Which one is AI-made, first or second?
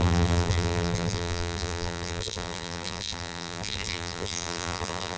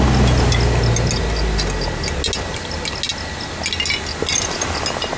first